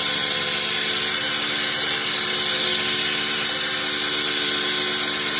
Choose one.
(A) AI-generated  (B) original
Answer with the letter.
B